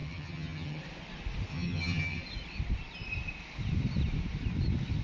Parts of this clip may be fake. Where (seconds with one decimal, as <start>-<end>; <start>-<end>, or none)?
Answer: 0.0-0.8; 1.5-2.2